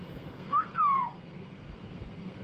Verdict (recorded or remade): remade